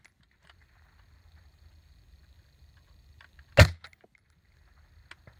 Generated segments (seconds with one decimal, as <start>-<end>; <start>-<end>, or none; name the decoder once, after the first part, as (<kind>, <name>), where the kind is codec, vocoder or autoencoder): none